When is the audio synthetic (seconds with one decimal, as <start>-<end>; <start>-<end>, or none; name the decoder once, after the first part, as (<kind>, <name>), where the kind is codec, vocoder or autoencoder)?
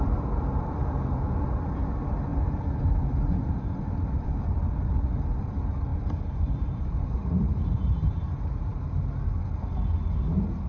2.3-2.8 (vocoder, BigVGAN v2); 3.4-4.6; 5.9-9.4